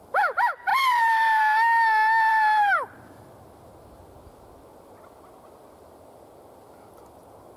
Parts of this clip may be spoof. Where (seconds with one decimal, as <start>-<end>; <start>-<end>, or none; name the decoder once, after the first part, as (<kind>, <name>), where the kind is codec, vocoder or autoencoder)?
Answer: 0.7-1.4 (vocoder, BigVGAN v2); 2.3-3.3